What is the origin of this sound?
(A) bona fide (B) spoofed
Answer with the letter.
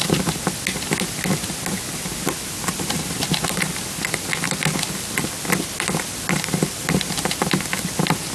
A